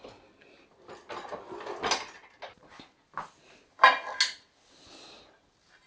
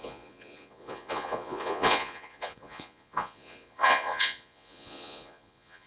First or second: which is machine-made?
second